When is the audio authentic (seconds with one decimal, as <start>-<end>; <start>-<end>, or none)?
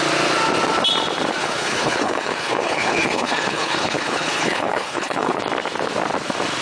0.0-1.4; 5.4-6.6